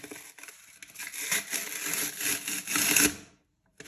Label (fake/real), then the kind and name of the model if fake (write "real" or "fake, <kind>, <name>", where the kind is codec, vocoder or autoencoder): real